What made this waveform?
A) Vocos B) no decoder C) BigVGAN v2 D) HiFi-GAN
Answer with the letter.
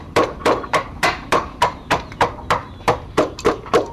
C